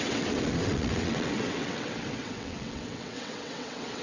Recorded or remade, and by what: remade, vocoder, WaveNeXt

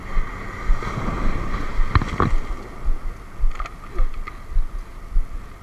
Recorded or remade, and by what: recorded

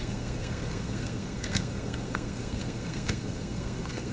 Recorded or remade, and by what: remade, codec, SNAC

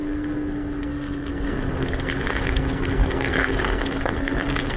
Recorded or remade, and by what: remade, codec, SNAC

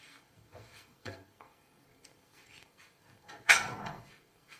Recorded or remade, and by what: remade, codec, SNAC